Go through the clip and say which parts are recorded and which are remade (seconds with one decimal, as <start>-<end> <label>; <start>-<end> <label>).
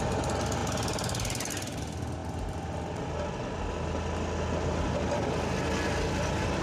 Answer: 0.0-6.6 recorded